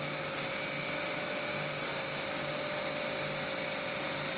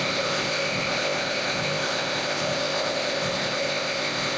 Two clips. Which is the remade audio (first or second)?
second